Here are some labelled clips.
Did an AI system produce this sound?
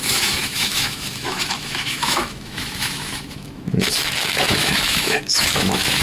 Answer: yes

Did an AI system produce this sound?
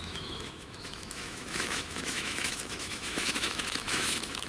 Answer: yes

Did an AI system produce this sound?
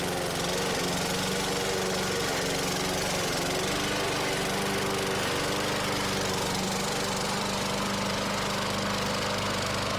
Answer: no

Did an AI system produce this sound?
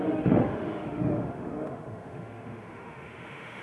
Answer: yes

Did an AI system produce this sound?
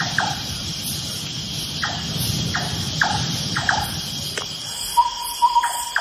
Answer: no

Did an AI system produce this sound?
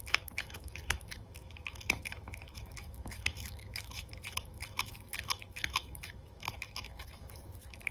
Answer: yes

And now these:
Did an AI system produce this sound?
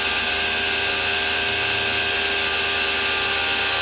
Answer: no